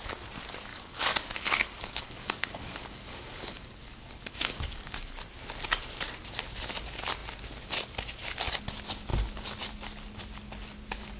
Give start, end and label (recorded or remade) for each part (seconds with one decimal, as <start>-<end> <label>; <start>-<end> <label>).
0.0-0.7 recorded; 0.7-5.1 remade; 5.1-11.2 recorded